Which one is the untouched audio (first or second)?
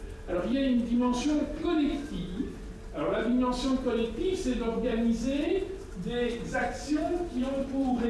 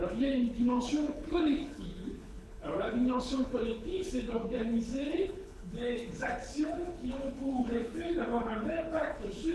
first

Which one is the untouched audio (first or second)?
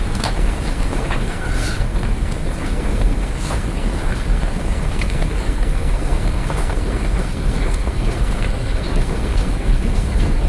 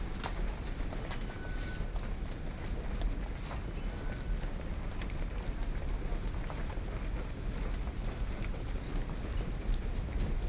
second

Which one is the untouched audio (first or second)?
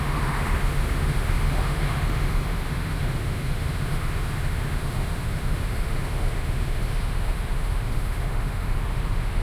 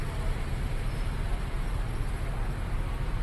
second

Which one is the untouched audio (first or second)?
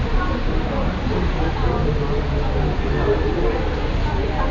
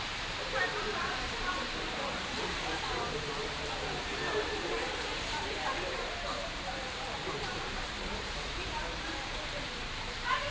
first